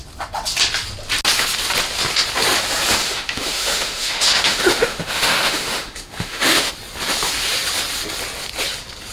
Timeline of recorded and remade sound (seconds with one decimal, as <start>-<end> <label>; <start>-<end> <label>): 0.0-3.0 recorded; 3.0-6.7 remade; 6.7-9.1 recorded